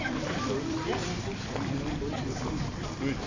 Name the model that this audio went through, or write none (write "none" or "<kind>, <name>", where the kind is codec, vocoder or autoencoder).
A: vocoder, BigVGAN v2